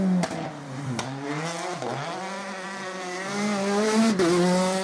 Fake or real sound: fake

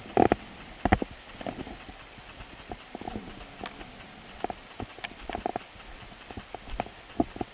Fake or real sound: real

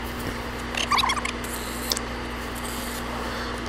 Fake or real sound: real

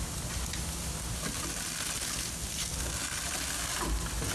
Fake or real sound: real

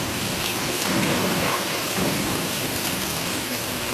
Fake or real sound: fake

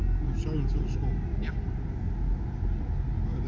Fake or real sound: real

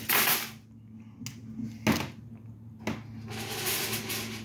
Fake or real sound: real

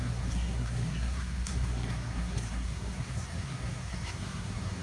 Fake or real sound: fake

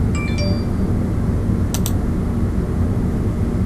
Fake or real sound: real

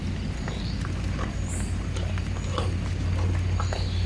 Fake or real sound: real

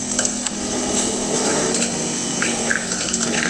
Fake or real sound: fake